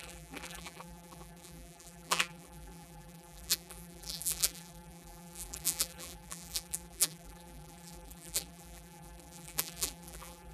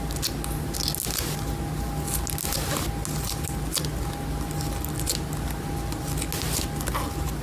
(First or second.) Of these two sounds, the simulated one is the first